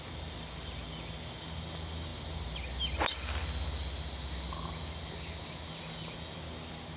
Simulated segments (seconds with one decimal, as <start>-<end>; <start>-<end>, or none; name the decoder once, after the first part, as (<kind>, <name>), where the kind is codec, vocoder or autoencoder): none